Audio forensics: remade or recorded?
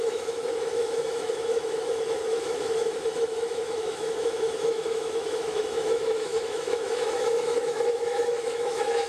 remade